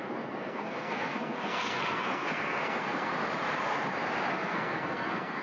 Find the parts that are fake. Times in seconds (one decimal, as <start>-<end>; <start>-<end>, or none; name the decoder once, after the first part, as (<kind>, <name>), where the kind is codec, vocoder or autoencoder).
0.0-3.1 (codec, SNAC); 4.3-5.4